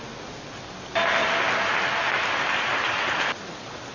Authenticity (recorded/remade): recorded